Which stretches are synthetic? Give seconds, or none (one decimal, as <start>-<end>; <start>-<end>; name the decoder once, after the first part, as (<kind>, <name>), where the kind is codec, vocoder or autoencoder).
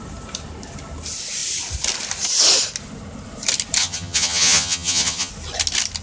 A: 3.8-5.3 (vocoder, HiFi-GAN)